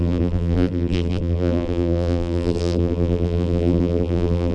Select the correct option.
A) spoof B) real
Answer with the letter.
A